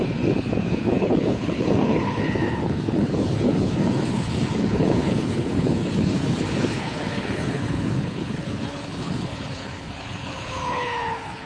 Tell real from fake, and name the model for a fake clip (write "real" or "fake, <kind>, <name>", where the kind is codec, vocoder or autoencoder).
fake, codec, HILCodec